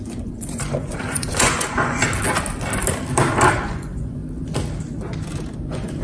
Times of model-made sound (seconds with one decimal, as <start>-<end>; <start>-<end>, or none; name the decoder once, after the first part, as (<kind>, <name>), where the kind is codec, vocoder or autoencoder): 0.0-2.0 (vocoder, Vocos); 3.5-4.2; 5.6-6.0

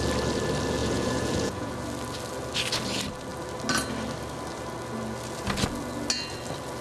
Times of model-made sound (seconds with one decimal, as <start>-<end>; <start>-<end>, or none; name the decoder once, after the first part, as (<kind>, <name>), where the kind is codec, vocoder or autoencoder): 0.8-1.7 (vocoder, Vocos)

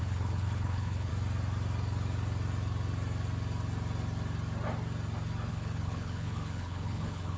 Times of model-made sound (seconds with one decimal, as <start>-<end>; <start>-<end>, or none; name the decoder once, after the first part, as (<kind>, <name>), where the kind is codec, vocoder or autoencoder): 0.0-1.1 (codec, HILCodec); 5.5-7.4

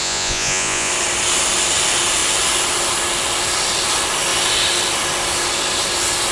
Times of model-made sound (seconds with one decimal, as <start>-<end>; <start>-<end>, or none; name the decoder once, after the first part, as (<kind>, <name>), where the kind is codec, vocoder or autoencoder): 0.0-0.9 (vocoder, Vocos)

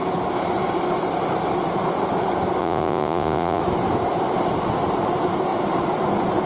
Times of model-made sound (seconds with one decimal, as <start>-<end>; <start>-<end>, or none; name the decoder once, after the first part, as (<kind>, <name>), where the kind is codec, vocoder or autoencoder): 2.6-3.6 (vocoder, Vocos)

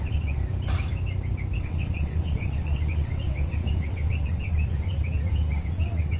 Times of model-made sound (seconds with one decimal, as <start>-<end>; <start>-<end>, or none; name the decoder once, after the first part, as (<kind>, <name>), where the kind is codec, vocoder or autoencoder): 0.0-0.4 (vocoder, WaveNeXt); 1.6-6.2